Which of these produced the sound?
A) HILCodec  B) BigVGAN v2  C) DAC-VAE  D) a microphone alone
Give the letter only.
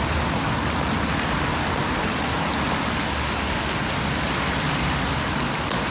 D